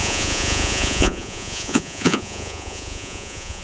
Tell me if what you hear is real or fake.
fake